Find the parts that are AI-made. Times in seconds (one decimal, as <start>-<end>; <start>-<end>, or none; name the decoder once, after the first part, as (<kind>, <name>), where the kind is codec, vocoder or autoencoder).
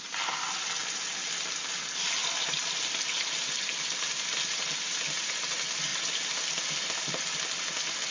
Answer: 0.8-1.4 (vocoder, BigVGAN v2); 2.2-4.3; 5.9-7.2